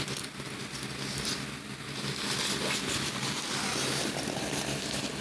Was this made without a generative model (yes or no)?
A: yes